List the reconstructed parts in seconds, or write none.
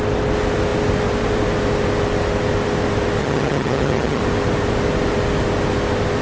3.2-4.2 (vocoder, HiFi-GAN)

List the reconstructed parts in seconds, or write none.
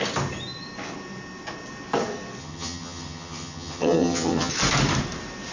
2.4-4.5 (vocoder, HiFi-GAN)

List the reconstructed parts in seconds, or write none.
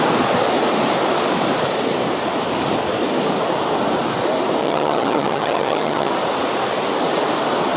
4.6-6.1 (vocoder, HiFi-GAN)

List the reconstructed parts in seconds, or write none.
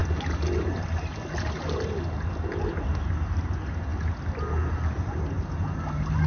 none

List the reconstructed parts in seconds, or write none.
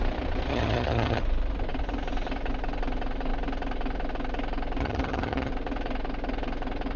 0.5-1.2 (vocoder, HiFi-GAN); 4.8-5.5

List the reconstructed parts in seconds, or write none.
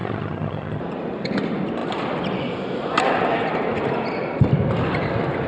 0.0-0.8 (vocoder, HiFi-GAN)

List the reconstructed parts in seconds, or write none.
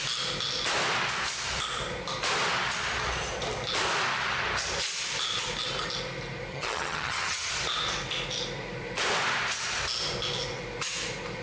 6.5-7.5 (vocoder, HiFi-GAN)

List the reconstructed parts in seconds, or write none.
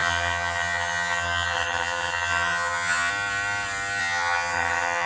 0.0-3.1 (vocoder, HiFi-GAN); 4.0-5.1